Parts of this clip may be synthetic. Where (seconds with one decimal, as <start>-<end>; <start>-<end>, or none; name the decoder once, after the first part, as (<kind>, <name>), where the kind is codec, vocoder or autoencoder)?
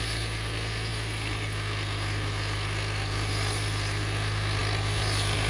none